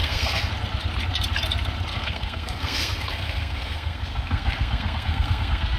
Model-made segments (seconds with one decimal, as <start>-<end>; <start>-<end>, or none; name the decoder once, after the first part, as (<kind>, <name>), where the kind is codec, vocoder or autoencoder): 0.0-0.5 (codec, SNAC); 1.9-5.8